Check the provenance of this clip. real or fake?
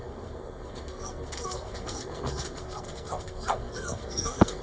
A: fake